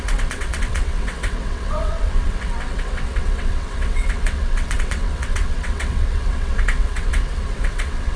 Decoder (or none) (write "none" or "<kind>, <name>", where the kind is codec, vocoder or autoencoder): vocoder, WaveNeXt